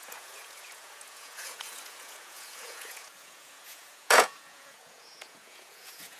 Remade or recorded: remade